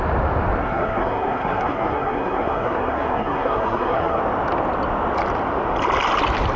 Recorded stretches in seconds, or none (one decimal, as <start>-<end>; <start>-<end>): 0.0-0.6; 4.2-6.6